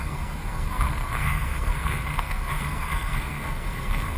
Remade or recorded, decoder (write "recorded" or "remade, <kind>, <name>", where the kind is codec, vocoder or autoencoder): remade, codec, SNAC